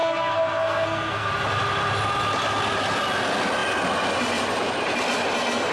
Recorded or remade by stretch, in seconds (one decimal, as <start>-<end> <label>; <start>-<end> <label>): 0.0-1.3 remade; 1.3-5.7 recorded